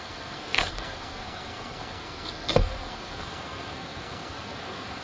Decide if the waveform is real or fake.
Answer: fake